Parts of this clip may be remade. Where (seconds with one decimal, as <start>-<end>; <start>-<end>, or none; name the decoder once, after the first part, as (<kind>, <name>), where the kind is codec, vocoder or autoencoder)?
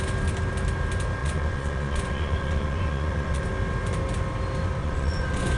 1.2-3.4 (vocoder, Vocos); 4.8-5.6